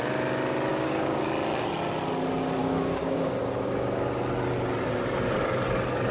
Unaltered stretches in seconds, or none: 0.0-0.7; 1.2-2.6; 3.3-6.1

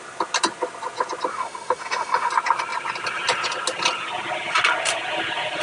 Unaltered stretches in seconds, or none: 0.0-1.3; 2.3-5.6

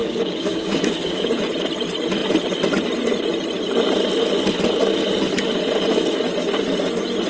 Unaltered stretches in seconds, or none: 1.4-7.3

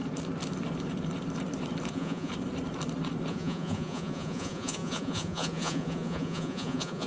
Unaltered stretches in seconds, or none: 0.0-1.9; 2.3-3.3

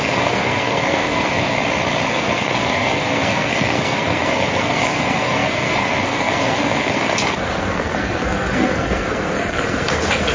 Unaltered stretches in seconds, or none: 1.6-2.1

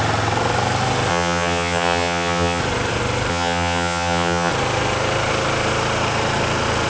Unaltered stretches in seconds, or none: 0.0-1.1; 2.6-3.3; 4.5-6.9